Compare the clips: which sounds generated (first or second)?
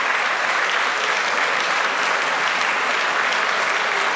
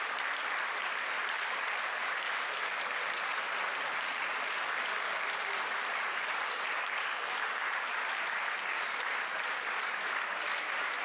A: second